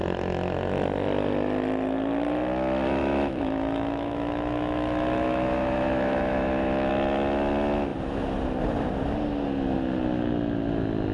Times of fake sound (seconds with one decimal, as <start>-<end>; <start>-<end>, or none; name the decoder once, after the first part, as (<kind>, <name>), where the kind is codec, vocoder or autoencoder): 3.0-6.9 (autoencoder, DAC-VAE)